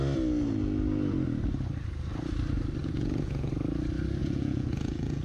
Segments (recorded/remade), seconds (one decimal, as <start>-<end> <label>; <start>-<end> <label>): 0.0-2.8 recorded; 2.8-3.5 remade; 3.5-4.2 recorded; 4.2-5.2 remade